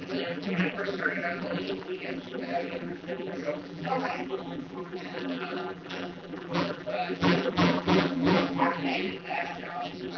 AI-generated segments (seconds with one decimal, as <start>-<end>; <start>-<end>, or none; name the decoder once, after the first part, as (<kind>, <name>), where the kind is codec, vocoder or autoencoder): 0.0-10.2 (vocoder, BigVGAN v2)